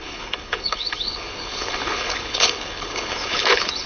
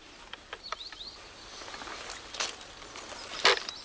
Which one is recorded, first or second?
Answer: second